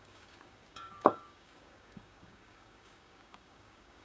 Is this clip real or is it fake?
fake